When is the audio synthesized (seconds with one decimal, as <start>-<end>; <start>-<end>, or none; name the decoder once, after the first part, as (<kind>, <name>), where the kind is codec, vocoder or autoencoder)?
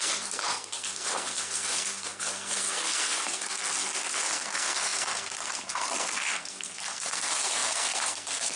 0.0-8.6 (codec, SNAC)